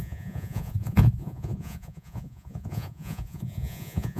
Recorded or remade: remade